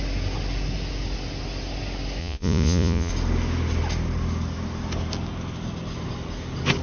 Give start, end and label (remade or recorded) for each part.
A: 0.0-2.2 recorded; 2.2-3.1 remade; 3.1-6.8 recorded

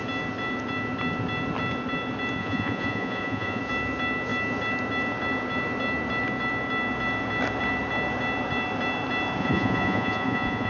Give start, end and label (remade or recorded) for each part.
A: 0.0-2.4 recorded; 2.4-3.6 remade; 3.6-9.4 recorded; 9.4-10.7 remade